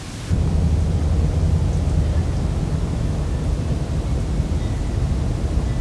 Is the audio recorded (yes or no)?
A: yes